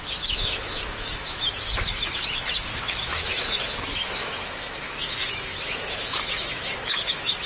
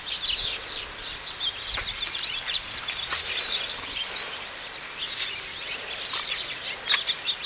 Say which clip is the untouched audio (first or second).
second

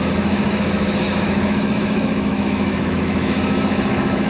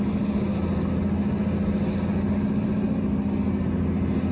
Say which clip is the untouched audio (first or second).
second